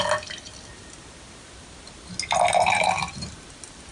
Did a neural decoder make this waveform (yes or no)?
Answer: no